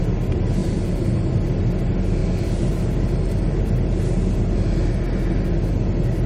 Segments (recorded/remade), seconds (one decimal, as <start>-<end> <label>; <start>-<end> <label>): 0.0-6.3 recorded